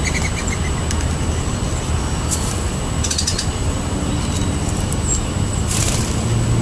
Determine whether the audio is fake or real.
real